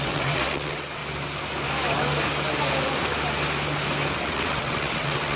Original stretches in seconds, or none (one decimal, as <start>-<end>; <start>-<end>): 1.0-4.2